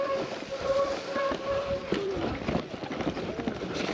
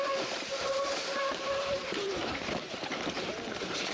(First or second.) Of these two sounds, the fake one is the second